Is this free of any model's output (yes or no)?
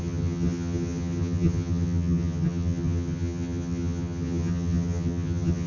no